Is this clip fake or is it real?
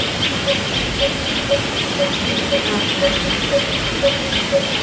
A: real